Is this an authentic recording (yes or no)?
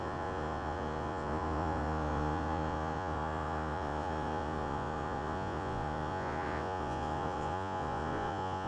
no